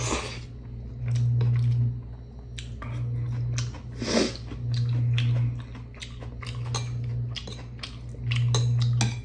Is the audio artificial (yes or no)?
no